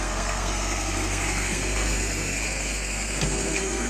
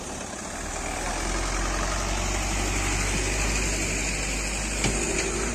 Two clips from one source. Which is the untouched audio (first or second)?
second